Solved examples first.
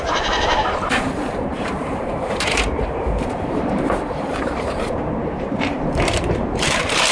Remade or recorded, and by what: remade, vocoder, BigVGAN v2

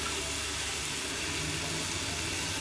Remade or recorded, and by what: recorded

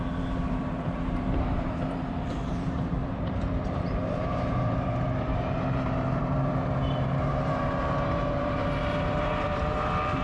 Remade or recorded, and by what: remade, vocoder, BigVGAN v2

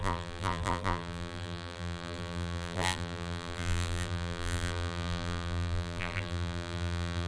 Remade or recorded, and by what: remade, vocoder, BigVGAN v2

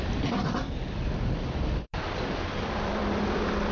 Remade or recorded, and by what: remade, vocoder, BigVGAN v2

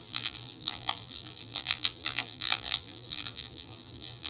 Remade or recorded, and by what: remade, vocoder, BigVGAN v2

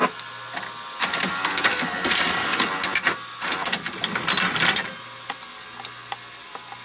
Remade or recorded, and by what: recorded